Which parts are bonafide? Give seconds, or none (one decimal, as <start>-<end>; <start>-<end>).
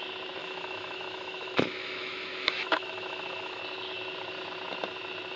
0.0-0.4; 3.6-5.4